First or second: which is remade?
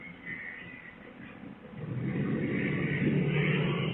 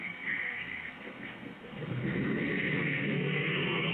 second